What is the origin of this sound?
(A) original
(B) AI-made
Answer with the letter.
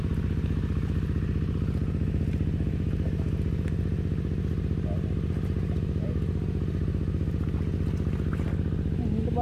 A